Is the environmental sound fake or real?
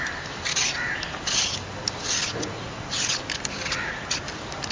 real